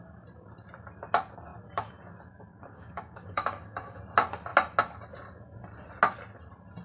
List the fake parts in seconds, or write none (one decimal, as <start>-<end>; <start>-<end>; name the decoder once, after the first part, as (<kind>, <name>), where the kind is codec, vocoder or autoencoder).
2.5-4.0 (codec, DAC)

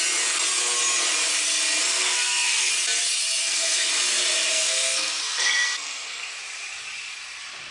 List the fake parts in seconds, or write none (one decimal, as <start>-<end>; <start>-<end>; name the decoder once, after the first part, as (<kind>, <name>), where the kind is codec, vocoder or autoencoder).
1.9-2.7 (codec, SNAC); 3.4-3.9; 4.5-6.3

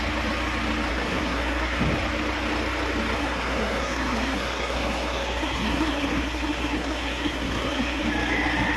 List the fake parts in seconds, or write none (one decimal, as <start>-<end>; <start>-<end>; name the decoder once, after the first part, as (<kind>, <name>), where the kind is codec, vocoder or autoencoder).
0.9-1.8 (codec, SNAC); 3.2-8.0

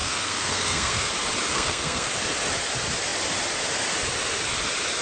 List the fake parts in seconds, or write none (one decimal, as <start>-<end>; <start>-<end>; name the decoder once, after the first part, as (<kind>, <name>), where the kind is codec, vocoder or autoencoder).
0.0-1.1 (codec, SNAC); 1.5-2.1

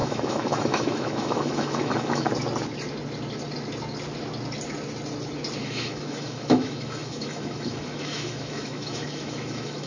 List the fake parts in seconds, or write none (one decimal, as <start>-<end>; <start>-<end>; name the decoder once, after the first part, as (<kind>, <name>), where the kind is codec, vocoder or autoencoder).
0.0-2.3 (autoencoder, DAC-VAE); 5.6-9.9

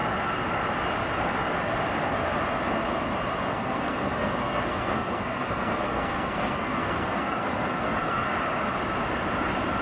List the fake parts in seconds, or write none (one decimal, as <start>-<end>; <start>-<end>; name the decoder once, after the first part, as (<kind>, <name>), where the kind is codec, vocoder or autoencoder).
3.5-8.3 (codec, SNAC)

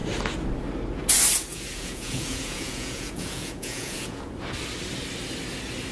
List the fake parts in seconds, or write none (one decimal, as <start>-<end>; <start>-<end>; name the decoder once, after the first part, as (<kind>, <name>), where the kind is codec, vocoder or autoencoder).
1.5-4.3 (vocoder, Vocos)

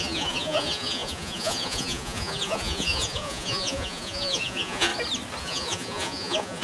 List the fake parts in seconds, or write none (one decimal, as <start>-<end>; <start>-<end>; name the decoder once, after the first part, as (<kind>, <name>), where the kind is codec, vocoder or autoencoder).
0.0-4.9 (vocoder, Vocos); 5.4-6.6